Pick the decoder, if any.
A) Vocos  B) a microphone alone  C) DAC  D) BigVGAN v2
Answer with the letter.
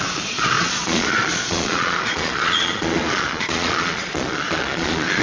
A